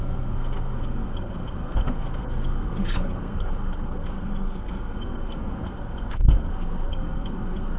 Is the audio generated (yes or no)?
yes